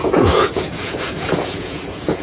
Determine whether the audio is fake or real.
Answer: fake